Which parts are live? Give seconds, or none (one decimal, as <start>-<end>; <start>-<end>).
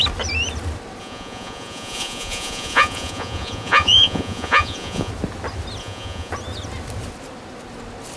0.0-1.0; 5.1-5.8; 6.3-8.2